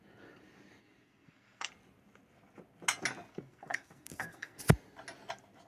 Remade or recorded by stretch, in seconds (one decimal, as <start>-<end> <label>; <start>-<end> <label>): 0.0-0.8 recorded; 0.8-1.7 remade; 1.7-3.3 recorded; 3.3-4.6 remade; 4.6-5.7 recorded